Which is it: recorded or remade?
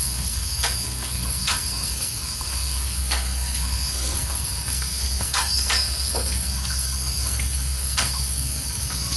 remade